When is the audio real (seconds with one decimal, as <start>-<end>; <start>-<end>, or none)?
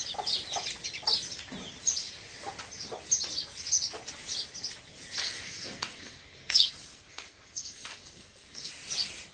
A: 0.0-5.2; 8.7-9.3